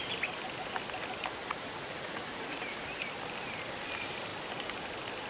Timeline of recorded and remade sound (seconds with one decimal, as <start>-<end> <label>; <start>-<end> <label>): 0.0-1.4 recorded; 1.4-3.0 remade; 3.0-5.3 recorded